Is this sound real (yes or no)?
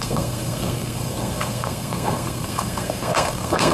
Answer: no